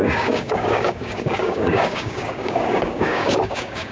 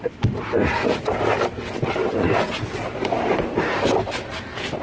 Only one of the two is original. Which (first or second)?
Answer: second